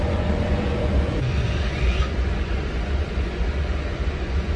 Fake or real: fake